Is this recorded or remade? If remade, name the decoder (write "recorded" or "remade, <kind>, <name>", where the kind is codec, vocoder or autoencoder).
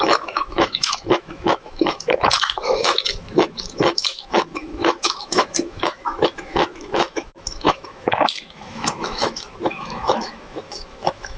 remade, autoencoder, DAC-VAE